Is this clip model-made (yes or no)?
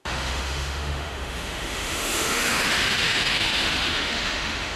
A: yes